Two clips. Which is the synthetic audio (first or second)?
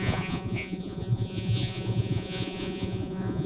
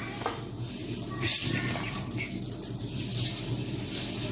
first